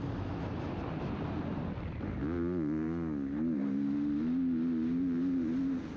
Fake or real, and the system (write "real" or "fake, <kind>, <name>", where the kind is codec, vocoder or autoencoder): real